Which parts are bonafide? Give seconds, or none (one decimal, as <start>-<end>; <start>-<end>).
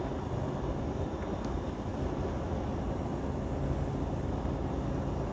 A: 0.0-5.3